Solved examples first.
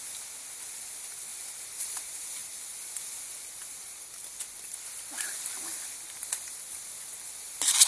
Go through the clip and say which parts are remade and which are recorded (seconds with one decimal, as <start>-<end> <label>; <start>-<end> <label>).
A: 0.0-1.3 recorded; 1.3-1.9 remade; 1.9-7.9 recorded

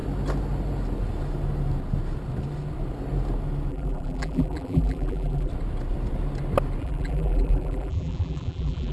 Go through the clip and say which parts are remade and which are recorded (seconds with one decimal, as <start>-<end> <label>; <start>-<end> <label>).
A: 0.0-3.7 recorded; 3.7-5.5 remade; 5.5-6.8 recorded; 6.8-8.9 remade

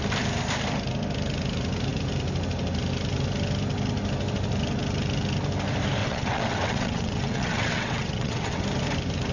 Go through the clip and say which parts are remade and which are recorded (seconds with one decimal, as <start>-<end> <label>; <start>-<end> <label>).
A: 0.0-6.0 recorded; 6.0-8.6 remade; 8.6-9.3 recorded

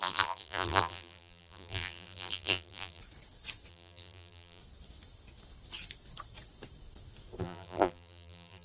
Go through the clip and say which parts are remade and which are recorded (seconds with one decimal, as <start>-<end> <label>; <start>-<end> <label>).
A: 0.0-3.0 remade; 3.0-3.7 recorded; 3.7-4.6 remade; 4.6-7.4 recorded; 7.4-8.6 remade